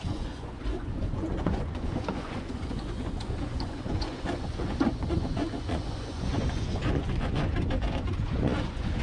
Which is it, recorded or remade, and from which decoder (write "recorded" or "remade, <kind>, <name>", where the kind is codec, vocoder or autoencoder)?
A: remade, vocoder, Vocos